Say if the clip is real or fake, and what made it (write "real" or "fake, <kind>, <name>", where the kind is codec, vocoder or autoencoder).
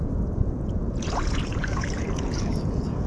fake, vocoder, Vocos